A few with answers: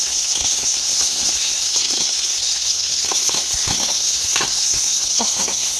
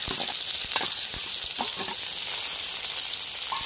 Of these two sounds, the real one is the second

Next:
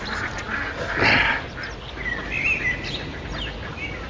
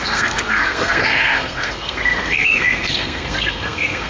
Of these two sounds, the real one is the first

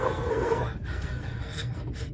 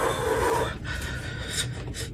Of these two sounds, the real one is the second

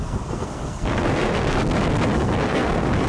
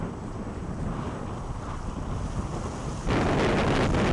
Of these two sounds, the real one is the second